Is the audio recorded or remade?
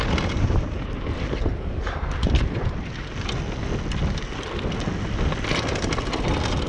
recorded